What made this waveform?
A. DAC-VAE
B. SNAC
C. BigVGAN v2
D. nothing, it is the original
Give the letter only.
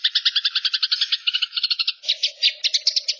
D